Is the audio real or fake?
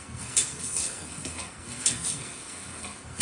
fake